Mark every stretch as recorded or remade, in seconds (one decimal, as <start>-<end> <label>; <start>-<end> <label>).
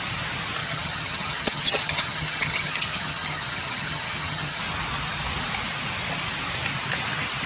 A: 0.0-0.6 recorded; 0.6-4.6 remade; 4.6-7.5 recorded